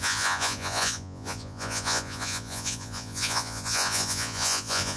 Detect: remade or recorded remade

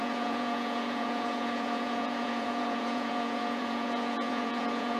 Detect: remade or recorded remade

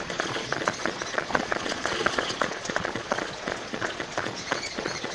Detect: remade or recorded remade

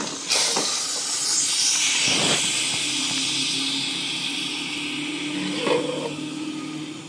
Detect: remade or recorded recorded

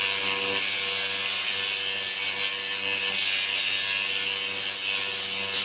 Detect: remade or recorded recorded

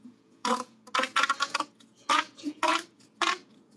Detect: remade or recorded remade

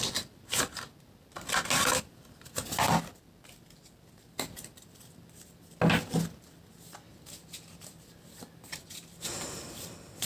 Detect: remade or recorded recorded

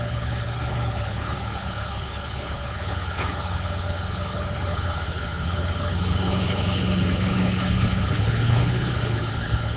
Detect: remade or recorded remade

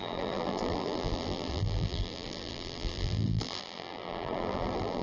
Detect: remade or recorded remade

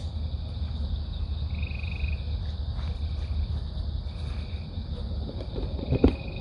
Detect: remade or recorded recorded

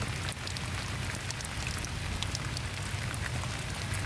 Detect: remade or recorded recorded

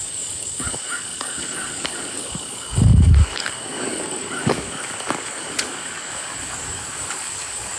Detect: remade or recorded remade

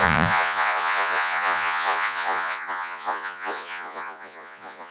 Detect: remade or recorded remade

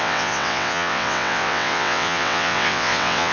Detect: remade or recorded remade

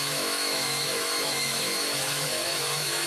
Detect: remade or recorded remade